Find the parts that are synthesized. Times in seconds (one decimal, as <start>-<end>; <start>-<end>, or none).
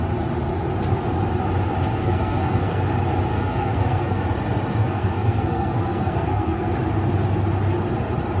2.0-2.8; 3.3-4.2; 4.8-6.7